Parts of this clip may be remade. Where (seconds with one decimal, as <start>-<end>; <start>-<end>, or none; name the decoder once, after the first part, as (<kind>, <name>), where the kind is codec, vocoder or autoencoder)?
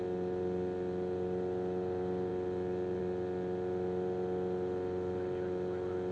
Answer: none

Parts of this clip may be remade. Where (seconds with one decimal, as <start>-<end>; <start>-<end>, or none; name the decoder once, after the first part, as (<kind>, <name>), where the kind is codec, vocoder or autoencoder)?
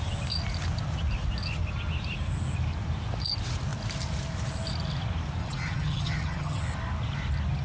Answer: 5.4-6.6 (vocoder, HiFi-GAN)